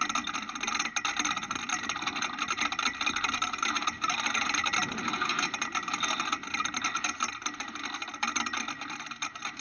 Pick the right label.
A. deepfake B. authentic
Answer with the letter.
B